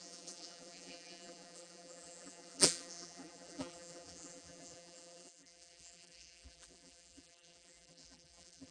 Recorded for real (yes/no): no